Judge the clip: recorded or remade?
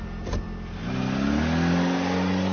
recorded